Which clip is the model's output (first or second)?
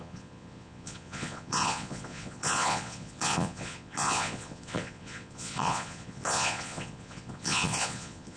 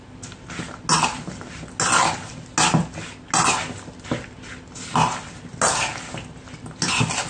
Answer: first